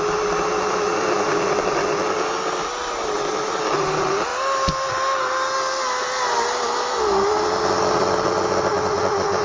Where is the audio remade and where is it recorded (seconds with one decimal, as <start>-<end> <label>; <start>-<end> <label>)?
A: 0.0-9.4 recorded

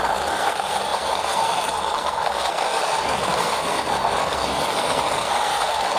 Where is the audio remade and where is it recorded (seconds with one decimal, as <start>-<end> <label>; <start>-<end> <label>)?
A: 0.0-6.0 remade

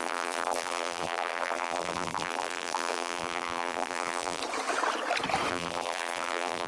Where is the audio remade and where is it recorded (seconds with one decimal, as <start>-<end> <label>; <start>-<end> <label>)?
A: 0.0-4.4 remade; 4.4-5.5 recorded; 5.5-6.7 remade